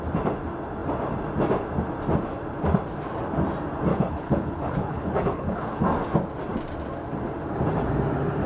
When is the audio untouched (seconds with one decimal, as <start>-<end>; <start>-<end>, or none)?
0.0-3.9; 5.8-8.5